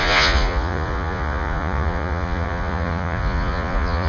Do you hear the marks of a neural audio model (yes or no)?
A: yes